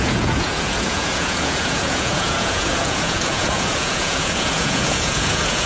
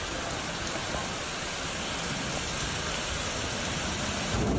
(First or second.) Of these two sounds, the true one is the second